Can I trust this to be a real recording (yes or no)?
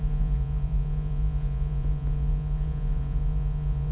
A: no